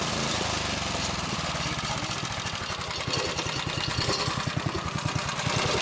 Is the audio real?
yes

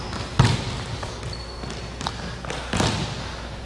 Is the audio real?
yes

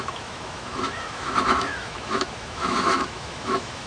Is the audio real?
no